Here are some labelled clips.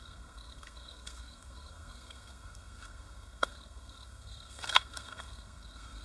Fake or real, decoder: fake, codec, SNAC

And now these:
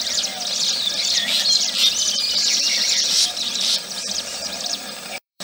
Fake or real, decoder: fake, vocoder, BigVGAN v2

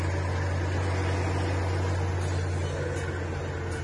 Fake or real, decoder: real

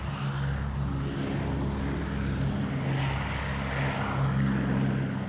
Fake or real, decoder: real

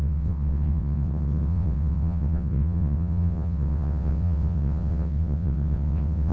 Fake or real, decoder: fake, vocoder, WaveNeXt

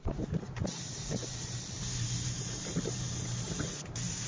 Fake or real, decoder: fake, vocoder, BigVGAN v2